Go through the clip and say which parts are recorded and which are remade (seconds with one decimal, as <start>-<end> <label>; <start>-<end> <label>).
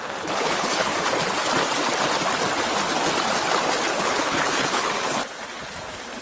0.0-0.9 remade; 0.9-4.0 recorded; 4.0-5.2 remade; 5.2-6.2 recorded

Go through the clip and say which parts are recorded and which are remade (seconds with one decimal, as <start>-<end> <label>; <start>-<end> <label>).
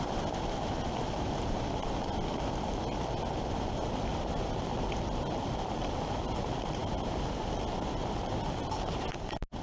0.0-9.6 recorded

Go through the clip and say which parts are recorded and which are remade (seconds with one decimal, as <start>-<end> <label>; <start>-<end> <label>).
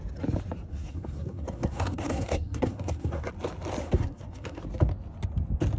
0.0-0.7 recorded; 0.7-3.3 remade; 3.3-3.8 recorded; 3.8-4.6 remade; 4.6-5.8 recorded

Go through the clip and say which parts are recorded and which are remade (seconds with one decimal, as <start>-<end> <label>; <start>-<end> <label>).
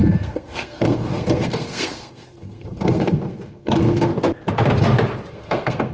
0.0-4.1 remade; 4.1-5.3 recorded; 5.3-5.9 remade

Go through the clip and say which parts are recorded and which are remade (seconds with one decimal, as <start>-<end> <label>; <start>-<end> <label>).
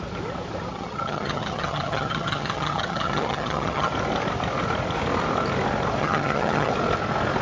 0.0-0.7 recorded; 0.7-3.9 remade; 3.9-6.0 recorded; 6.0-6.7 remade; 6.7-7.4 recorded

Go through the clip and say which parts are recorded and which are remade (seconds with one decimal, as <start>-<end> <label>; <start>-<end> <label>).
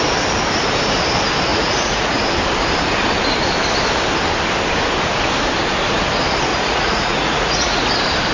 0.0-1.5 recorded; 1.5-2.2 remade; 2.2-6.5 recorded; 6.5-7.9 remade; 7.9-8.3 recorded